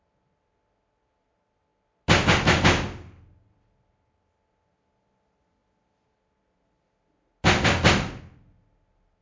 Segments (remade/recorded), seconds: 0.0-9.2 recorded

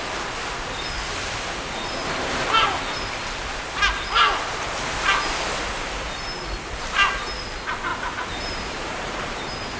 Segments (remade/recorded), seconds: 0.0-7.9 recorded; 7.9-9.8 remade